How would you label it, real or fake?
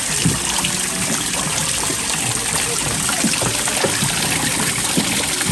real